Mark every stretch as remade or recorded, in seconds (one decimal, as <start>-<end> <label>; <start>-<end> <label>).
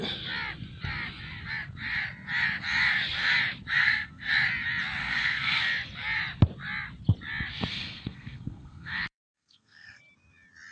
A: 0.0-3.8 recorded; 3.8-4.3 remade; 4.3-5.0 recorded; 5.0-5.6 remade; 5.6-7.7 recorded; 7.7-10.0 remade; 10.0-10.7 recorded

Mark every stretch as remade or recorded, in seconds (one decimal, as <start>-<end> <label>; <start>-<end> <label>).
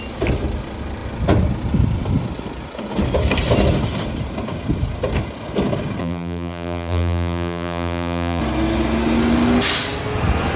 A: 0.0-6.0 recorded; 6.0-8.4 remade; 8.4-10.6 recorded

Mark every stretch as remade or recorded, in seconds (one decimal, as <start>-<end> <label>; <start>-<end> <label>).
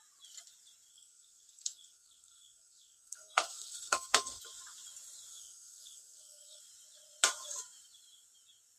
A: 0.0-0.9 recorded; 0.9-4.4 remade; 4.4-5.3 recorded; 5.3-6.6 remade; 6.6-8.8 recorded